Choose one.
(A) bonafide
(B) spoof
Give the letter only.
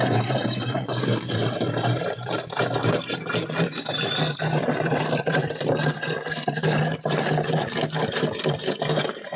B